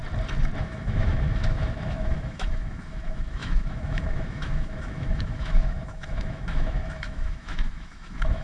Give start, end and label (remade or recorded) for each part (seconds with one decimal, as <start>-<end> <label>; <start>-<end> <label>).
0.0-0.6 recorded; 0.6-8.4 remade